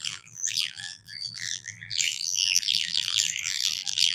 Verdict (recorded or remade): remade